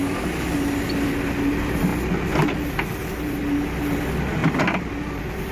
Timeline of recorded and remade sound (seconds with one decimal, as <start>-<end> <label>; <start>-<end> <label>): 0.0-5.5 recorded